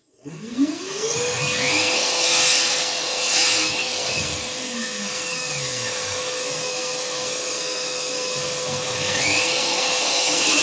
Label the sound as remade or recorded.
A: remade